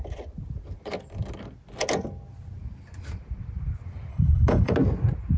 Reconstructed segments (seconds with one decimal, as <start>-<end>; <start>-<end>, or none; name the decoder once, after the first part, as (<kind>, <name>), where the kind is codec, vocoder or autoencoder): 4.1-4.7 (codec, HILCodec)